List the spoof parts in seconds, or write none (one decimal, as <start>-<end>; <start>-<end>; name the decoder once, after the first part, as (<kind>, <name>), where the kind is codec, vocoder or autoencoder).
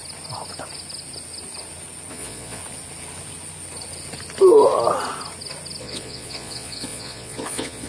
2.1-2.6 (vocoder, Vocos); 5.8-7.9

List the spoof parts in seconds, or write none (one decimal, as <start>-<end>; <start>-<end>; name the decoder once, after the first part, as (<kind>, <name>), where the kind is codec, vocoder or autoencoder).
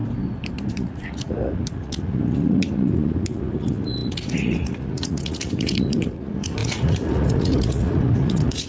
0.7-8.7 (vocoder, Vocos)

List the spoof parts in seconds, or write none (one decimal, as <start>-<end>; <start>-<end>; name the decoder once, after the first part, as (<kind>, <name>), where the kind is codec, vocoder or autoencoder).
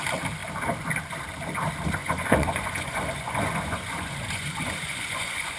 2.0-5.6 (vocoder, Vocos)